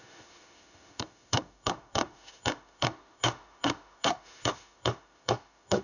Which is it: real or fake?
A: fake